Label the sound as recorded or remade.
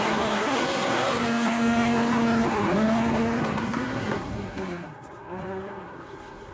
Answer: remade